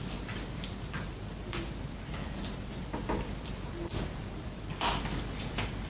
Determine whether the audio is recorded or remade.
recorded